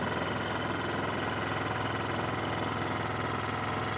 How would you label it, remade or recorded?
recorded